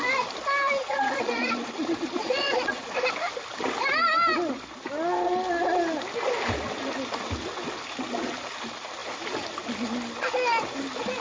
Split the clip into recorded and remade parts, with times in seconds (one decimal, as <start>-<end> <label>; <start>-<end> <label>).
0.0-0.8 recorded; 0.8-2.8 remade; 2.8-11.2 recorded